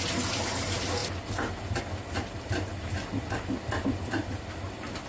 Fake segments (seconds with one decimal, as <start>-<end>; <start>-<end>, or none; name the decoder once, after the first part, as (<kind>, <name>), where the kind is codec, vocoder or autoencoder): none